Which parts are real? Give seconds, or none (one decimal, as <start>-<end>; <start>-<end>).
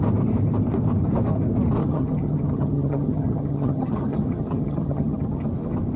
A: 0.0-1.8; 5.4-6.0